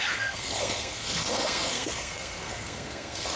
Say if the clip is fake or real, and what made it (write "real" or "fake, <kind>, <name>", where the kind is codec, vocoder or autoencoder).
fake, codec, SNAC